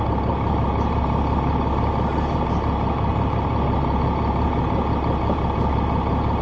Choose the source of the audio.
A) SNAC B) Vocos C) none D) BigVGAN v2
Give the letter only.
D